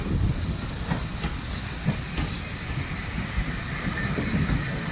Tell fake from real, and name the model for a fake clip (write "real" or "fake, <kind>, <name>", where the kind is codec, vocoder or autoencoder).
real